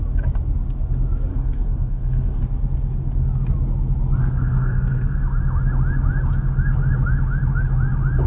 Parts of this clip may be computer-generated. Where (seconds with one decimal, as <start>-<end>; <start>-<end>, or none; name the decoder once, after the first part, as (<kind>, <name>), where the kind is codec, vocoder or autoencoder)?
1.3-2.4 (codec, SNAC); 4.2-5.2